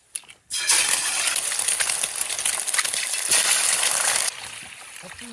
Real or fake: real